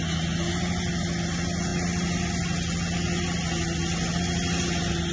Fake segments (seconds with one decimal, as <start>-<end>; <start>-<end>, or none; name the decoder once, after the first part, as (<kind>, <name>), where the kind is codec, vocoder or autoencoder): none